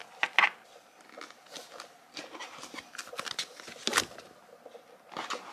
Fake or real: real